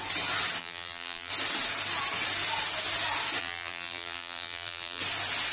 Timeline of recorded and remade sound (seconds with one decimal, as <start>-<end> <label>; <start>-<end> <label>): 0.0-0.6 recorded; 0.6-1.3 remade; 1.3-3.4 recorded; 3.4-5.0 remade; 5.0-5.5 recorded